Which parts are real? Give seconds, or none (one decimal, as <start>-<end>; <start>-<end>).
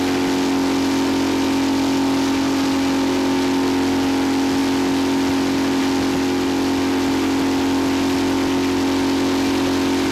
0.0-10.1